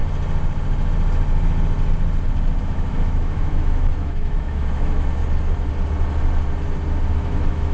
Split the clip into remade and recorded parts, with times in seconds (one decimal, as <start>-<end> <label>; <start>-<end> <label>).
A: 0.0-2.6 recorded; 2.6-5.2 remade; 5.2-7.1 recorded; 7.1-7.7 remade